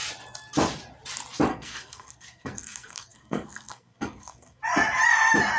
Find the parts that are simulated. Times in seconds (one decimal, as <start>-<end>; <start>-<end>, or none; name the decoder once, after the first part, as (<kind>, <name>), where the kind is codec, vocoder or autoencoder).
1.5-4.6 (codec, SNAC)